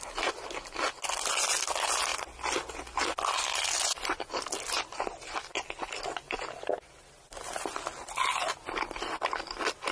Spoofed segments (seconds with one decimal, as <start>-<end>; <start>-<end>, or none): none